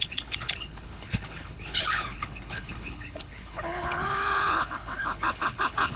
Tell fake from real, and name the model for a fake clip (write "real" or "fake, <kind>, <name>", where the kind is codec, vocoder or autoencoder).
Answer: fake, codec, HILCodec